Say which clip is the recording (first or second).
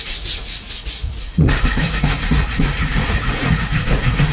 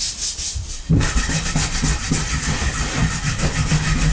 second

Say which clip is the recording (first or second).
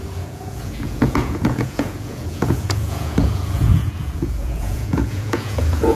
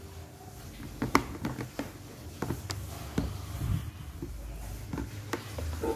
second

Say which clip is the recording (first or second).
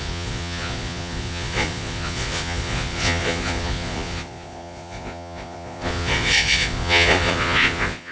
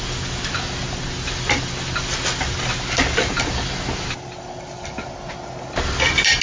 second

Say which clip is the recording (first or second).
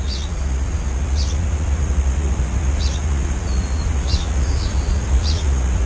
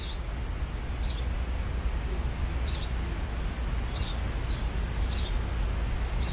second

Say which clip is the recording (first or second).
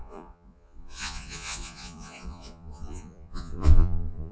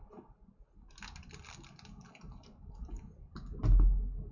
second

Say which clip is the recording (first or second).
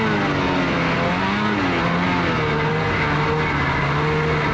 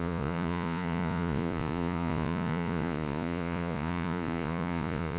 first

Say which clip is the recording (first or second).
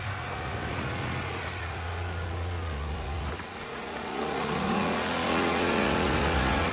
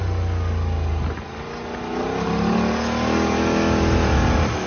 second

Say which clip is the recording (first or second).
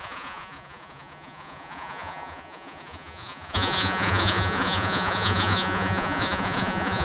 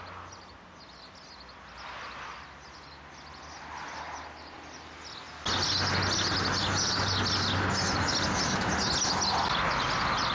second